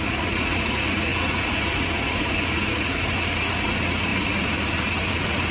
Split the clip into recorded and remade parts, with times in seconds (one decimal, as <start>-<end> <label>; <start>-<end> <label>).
0.0-5.5 remade